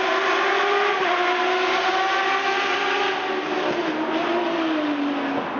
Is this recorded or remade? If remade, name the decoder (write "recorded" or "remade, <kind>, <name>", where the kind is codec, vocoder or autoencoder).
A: recorded